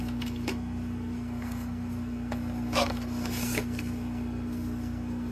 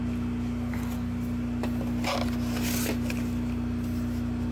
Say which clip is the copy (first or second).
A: first